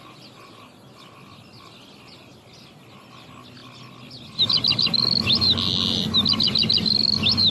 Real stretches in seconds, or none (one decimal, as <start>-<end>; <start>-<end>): 0.0-7.5